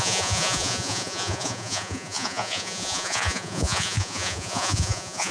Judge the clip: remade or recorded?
remade